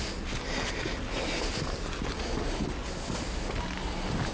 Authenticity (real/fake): real